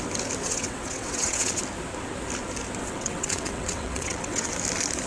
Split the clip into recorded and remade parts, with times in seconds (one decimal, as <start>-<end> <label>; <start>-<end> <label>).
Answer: 0.0-0.4 recorded; 0.4-1.6 remade; 1.6-2.8 recorded; 2.8-4.5 remade; 4.5-5.1 recorded